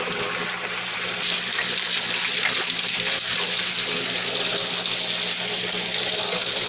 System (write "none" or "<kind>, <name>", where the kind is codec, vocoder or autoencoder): none